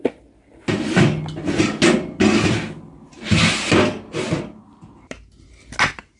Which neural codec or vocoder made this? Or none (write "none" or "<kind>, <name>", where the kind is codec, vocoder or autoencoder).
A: none